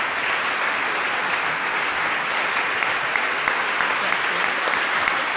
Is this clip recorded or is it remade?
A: recorded